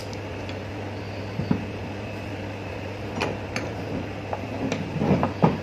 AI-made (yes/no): no